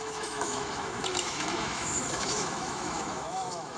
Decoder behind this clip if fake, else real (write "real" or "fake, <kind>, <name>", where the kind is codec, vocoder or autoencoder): fake, autoencoder, DAC-VAE